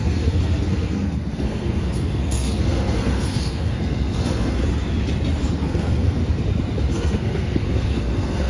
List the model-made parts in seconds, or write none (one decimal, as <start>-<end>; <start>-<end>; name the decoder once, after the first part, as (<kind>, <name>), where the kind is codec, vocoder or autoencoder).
0.0-4.6 (codec, SNAC); 5.6-6.2; 6.9-8.5